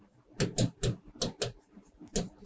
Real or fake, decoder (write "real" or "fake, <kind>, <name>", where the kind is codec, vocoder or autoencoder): real